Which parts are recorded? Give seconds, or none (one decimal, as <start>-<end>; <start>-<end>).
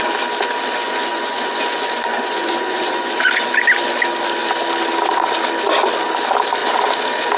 0.0-0.8; 3.4-7.4